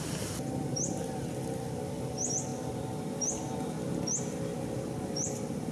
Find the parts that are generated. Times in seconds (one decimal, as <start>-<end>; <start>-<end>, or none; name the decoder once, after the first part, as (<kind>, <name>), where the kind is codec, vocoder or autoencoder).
none